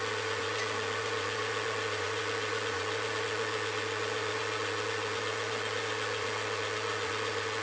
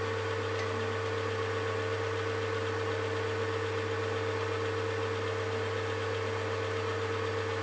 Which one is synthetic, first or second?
first